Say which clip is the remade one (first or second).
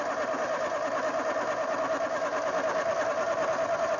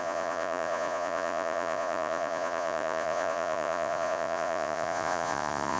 second